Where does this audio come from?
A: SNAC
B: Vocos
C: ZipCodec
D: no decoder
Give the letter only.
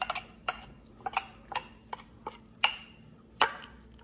D